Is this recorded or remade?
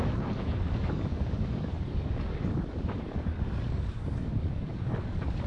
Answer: remade